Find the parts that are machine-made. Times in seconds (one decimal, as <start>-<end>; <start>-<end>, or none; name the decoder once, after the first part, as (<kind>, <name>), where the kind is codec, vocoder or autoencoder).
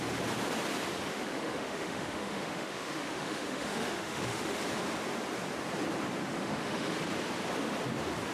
1.1-4.6 (autoencoder, DAC-VAE); 6.3-7.0